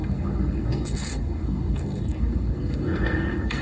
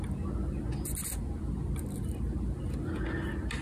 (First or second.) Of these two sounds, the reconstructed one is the first